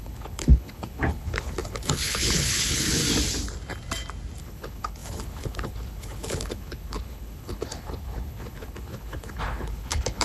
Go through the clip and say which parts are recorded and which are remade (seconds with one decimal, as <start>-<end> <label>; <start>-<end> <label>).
0.0-3.0 remade; 3.0-4.4 recorded; 4.4-10.2 remade